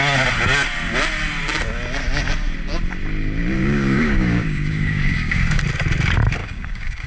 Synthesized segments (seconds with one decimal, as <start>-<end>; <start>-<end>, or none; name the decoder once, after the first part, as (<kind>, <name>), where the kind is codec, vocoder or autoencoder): 3.6-5.6 (codec, DAC); 6.4-7.1